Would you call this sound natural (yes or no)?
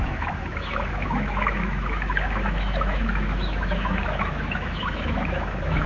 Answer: no